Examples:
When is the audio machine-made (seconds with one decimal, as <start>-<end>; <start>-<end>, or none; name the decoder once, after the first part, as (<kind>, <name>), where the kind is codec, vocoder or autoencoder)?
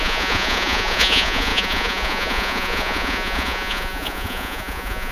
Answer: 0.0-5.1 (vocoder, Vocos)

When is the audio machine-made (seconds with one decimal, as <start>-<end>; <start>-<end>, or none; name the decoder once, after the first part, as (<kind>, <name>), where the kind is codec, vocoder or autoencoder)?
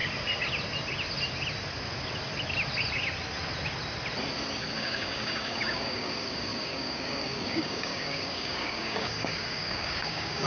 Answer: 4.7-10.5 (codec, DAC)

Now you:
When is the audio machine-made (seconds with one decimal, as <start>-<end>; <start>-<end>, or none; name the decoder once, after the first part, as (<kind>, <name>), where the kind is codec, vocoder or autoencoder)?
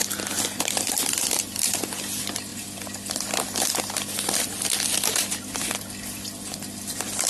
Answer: none